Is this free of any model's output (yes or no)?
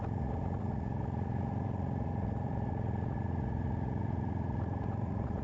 no